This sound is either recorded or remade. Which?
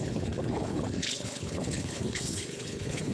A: remade